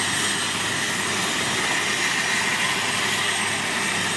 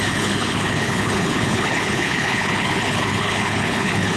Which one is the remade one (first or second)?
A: second